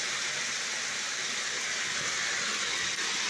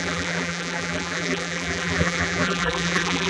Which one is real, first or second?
first